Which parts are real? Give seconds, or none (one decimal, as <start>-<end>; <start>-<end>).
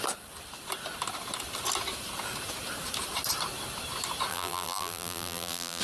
0.0-4.3